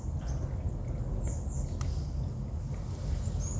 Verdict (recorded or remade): recorded